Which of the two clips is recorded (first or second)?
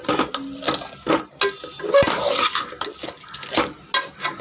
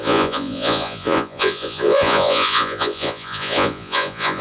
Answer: first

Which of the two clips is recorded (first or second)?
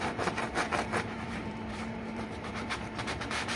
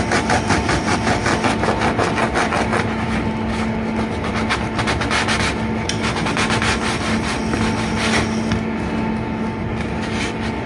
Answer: second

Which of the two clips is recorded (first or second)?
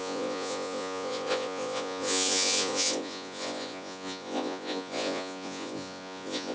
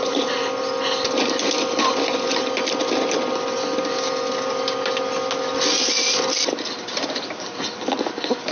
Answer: second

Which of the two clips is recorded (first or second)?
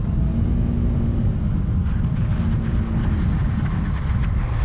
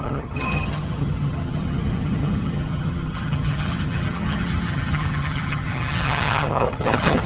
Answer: first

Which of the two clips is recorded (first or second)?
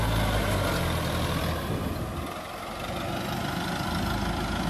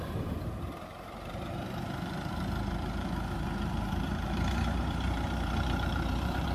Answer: first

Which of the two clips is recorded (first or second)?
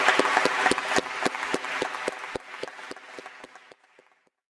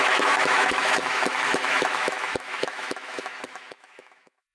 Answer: first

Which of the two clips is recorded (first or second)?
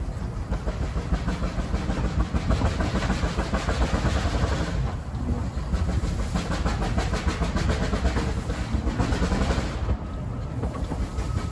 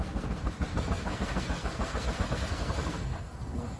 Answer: first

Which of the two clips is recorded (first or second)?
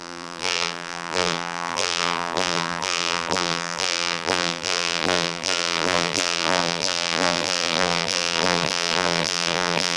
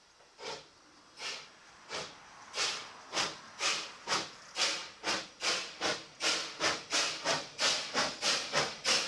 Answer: second